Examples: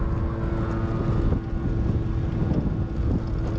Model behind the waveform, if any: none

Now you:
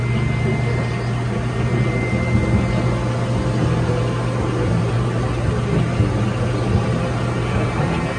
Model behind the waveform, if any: none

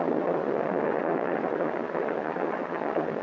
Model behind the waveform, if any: vocoder, Vocos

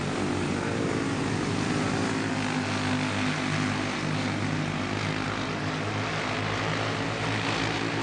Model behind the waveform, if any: none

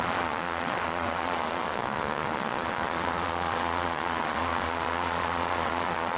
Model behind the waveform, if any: vocoder, Vocos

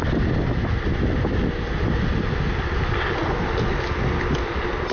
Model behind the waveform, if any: none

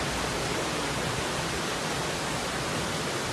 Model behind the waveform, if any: none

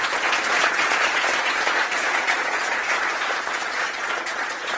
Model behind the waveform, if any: vocoder, Vocos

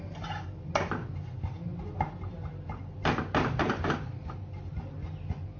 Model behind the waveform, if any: none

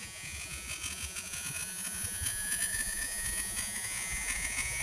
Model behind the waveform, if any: vocoder, Vocos